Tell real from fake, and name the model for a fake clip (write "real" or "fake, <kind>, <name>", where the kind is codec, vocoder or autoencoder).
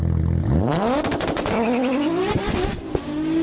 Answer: real